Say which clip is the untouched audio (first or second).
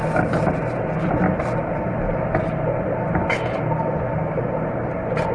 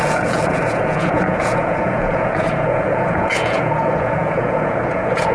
first